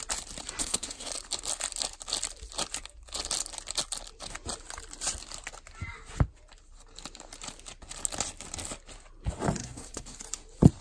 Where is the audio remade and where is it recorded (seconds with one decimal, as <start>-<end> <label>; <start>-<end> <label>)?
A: 0.0-0.6 recorded; 0.6-1.1 remade; 1.1-9.6 recorded; 9.6-10.2 remade; 10.2-10.8 recorded